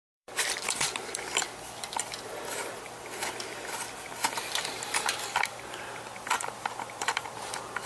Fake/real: fake